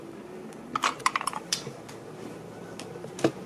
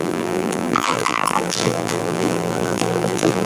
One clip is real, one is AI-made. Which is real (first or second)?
first